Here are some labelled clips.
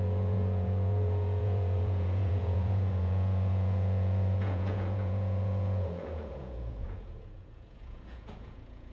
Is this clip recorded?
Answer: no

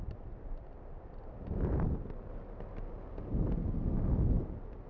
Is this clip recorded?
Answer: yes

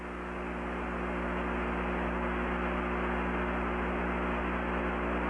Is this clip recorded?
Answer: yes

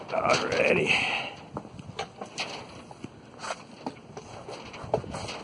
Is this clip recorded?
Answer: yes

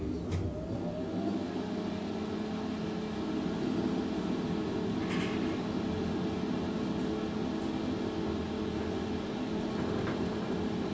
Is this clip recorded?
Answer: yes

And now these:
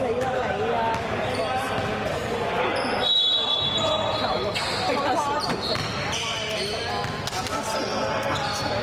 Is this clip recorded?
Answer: yes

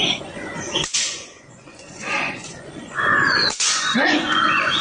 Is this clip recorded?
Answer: no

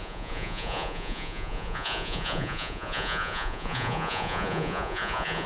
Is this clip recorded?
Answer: no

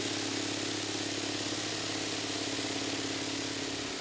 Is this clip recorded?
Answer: yes